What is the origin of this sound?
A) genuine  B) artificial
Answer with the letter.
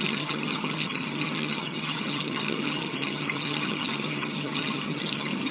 B